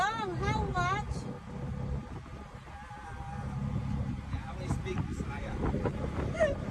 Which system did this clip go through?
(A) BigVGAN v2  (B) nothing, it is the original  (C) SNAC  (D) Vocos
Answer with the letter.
B